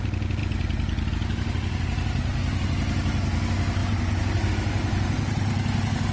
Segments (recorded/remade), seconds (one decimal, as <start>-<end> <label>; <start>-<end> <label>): 0.0-6.1 recorded